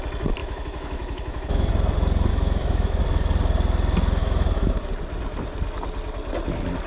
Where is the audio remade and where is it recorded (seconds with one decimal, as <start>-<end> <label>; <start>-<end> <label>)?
0.0-0.4 recorded; 0.4-1.7 remade; 1.7-2.3 recorded; 2.3-3.0 remade; 3.0-4.2 recorded; 4.2-4.8 remade; 4.8-6.9 recorded